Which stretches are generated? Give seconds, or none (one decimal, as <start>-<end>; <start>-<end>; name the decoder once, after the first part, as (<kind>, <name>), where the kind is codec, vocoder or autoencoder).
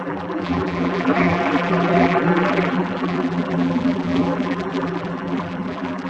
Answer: 0.0-6.1 (vocoder, BigVGAN v2)